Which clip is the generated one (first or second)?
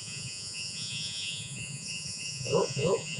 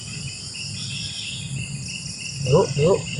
first